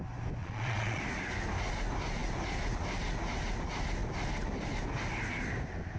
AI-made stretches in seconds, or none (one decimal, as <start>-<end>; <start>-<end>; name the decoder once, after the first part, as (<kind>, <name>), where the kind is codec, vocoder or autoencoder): 0.4-1.0 (vocoder, Vocos)

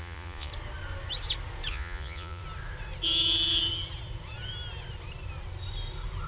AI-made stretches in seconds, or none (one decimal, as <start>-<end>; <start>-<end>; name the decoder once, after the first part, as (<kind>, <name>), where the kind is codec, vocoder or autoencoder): 0.0-0.5 (vocoder, Vocos); 1.7-2.4

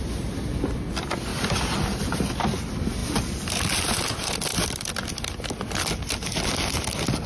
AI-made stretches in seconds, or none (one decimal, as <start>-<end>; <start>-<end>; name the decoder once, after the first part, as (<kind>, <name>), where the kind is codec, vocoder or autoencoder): 1.3-2.6 (vocoder, BigVGAN v2); 4.5-5.1

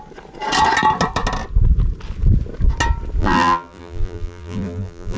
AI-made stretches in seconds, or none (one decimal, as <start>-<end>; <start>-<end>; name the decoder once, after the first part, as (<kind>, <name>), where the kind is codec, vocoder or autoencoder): 3.2-5.2 (vocoder, BigVGAN v2)